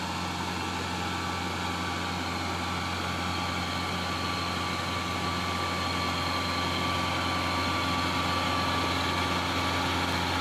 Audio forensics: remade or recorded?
recorded